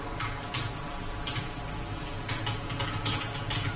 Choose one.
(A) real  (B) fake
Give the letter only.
A